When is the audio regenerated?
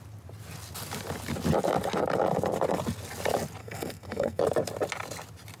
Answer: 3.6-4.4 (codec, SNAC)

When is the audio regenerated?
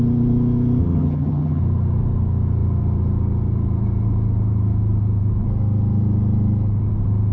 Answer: 0.8-1.6 (vocoder, HiFi-GAN)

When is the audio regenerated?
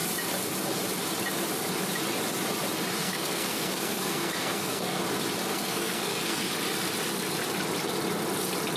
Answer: 3.0-5.0 (codec, SNAC); 5.5-6.5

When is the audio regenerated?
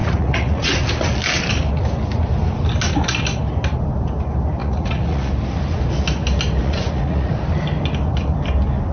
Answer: 0.0-0.7 (vocoder, Vocos); 4.6-5.3; 6.6-7.4